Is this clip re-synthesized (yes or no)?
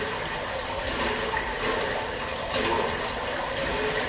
no